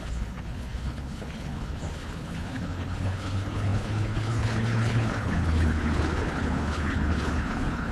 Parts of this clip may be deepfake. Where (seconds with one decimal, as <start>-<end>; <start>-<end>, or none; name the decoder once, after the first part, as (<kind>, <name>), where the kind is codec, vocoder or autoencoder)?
0.0-7.9 (codec, HILCodec)